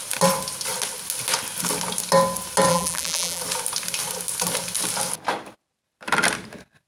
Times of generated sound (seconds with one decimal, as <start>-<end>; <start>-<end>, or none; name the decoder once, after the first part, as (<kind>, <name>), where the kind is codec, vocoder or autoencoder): 2.7-3.4 (vocoder, BigVGAN v2)